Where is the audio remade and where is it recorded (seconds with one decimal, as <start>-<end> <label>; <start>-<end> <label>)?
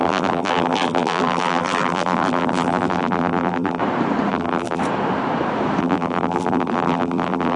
0.0-3.8 remade; 3.8-4.3 recorded; 4.3-4.8 remade; 4.8-5.8 recorded; 5.8-7.6 remade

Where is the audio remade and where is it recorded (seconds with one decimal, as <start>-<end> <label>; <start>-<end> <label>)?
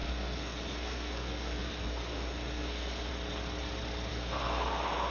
0.0-3.1 remade; 3.1-4.1 recorded; 4.1-5.1 remade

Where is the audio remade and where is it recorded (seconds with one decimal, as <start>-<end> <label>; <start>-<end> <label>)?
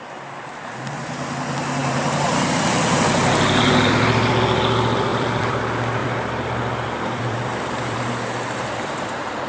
0.0-1.8 recorded; 1.8-4.3 remade; 4.3-5.1 recorded; 5.1-5.6 remade; 5.6-6.0 recorded; 6.0-8.1 remade; 8.1-9.5 recorded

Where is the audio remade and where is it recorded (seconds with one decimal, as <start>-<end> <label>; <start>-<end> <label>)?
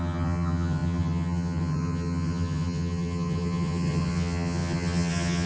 0.0-5.5 remade